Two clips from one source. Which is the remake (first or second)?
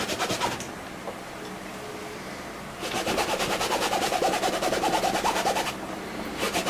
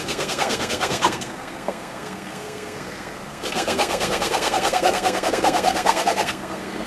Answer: second